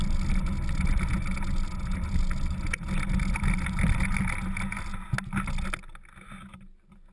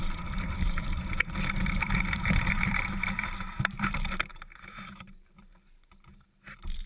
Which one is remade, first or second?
second